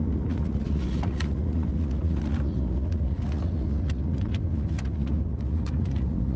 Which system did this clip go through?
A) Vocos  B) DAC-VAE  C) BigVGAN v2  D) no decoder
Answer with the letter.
A